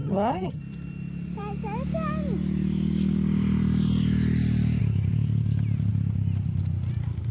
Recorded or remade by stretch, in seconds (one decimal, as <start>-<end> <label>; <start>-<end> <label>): 0.0-0.6 remade; 0.6-7.3 recorded